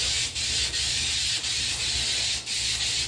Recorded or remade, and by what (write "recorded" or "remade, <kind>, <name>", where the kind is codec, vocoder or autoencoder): recorded